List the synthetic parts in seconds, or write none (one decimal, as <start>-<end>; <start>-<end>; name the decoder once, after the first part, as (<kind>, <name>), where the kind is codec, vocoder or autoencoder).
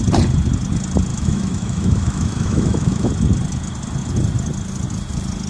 1.1-3.1 (autoencoder, DAC-VAE)